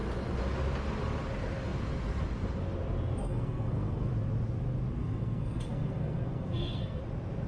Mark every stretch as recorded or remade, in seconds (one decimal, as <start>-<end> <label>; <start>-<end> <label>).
0.0-3.2 recorded; 3.2-4.1 remade; 4.1-5.0 recorded; 5.0-7.0 remade; 7.0-7.5 recorded